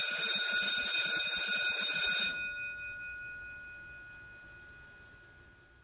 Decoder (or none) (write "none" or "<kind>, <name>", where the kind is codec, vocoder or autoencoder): none